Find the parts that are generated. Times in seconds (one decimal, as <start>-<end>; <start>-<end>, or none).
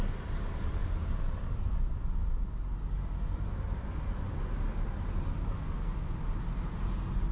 5.4-6.1